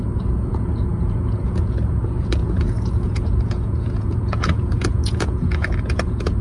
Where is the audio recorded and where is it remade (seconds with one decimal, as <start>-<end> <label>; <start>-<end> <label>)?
0.0-6.4 remade